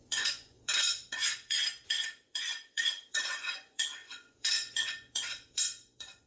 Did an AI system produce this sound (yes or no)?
yes